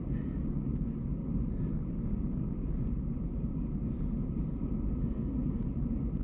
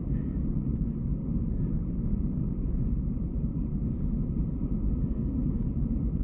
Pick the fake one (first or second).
second